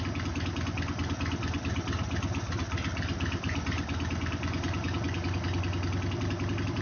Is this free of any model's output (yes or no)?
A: yes